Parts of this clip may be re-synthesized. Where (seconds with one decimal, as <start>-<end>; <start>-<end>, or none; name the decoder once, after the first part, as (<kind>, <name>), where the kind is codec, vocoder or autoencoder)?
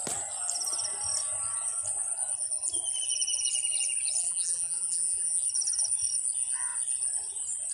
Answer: 4.2-5.4 (vocoder, BigVGAN v2)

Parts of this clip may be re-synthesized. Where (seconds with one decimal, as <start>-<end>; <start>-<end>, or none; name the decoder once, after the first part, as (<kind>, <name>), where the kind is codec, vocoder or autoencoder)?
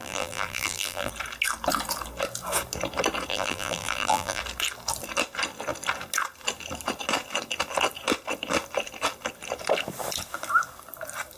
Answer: 0.0-1.1 (vocoder, BigVGAN v2); 3.3-4.4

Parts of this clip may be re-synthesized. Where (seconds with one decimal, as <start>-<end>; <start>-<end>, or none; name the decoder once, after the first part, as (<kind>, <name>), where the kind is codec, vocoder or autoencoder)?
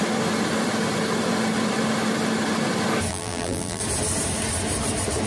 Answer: 3.1-3.8 (vocoder, BigVGAN v2)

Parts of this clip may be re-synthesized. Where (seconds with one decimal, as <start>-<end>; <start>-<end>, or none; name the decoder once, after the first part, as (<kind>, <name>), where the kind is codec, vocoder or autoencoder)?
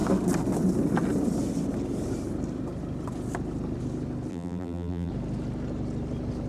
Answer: 4.3-5.1 (vocoder, BigVGAN v2)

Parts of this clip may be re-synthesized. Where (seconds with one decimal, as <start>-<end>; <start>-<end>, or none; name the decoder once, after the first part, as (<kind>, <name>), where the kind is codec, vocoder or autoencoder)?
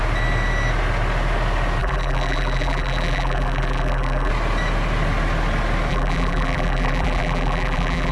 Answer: 1.8-4.3 (vocoder, BigVGAN v2); 5.9-8.1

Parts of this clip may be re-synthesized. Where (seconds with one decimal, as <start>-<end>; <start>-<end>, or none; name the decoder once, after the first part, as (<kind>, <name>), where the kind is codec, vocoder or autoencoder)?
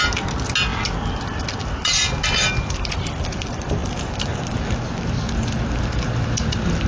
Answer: none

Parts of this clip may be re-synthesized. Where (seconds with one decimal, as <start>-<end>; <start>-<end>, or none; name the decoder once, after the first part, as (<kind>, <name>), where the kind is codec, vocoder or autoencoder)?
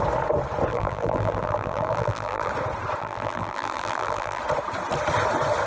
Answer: 0.7-2.5 (vocoder, BigVGAN v2); 3.0-4.4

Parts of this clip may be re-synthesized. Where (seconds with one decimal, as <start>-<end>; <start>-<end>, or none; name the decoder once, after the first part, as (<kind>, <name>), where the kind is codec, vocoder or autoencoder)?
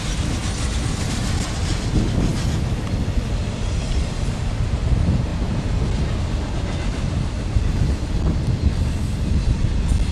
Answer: 0.4-1.7 (vocoder, BigVGAN v2); 2.3-3.4